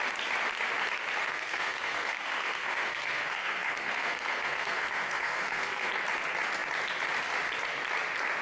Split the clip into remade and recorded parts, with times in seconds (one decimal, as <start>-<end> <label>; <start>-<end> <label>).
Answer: 0.0-1.2 recorded; 1.2-5.9 remade; 5.9-8.4 recorded